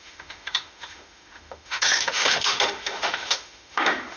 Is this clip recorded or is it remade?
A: remade